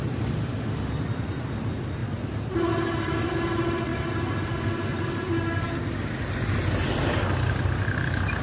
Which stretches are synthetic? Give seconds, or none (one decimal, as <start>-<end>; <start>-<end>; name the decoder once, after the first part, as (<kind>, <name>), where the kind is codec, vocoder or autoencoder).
0.4-0.9 (autoencoder, DAC-VAE)